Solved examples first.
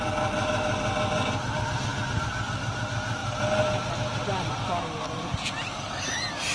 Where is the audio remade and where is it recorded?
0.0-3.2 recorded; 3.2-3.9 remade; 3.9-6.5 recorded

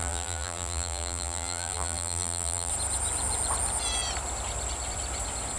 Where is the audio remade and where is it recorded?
0.0-2.7 remade; 2.7-5.6 recorded

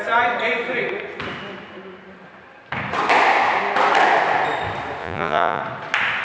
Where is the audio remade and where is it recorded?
0.0-5.0 recorded; 5.0-5.6 remade; 5.6-6.2 recorded